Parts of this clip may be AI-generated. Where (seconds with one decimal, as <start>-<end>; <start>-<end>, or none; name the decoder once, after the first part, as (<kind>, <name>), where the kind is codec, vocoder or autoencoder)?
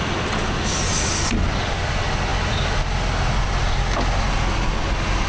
none